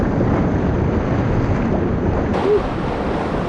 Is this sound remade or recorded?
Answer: recorded